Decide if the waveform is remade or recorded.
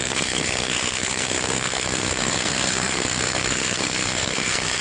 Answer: remade